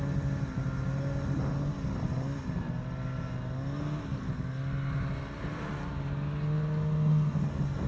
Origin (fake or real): real